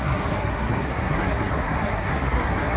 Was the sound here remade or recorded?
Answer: remade